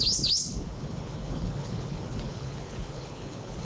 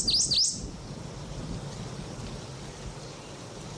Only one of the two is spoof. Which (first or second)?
first